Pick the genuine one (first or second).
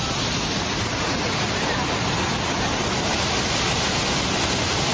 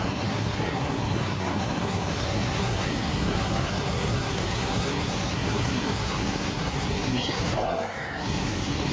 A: first